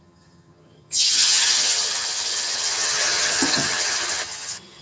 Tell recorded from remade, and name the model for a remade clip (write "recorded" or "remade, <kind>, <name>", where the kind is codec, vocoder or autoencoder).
remade, vocoder, HiFi-GAN